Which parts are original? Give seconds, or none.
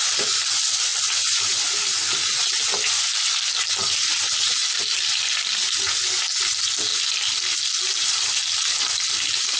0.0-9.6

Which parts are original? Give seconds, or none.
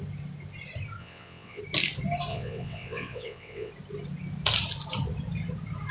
0.0-1.0; 1.6-2.3; 3.7-5.9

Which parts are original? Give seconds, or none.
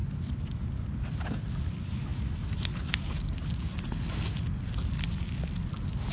0.0-6.1